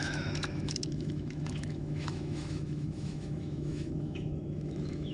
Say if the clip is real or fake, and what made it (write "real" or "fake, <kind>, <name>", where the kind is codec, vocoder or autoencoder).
fake, autoencoder, DAC-VAE